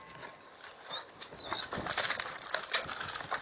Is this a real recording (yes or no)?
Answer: no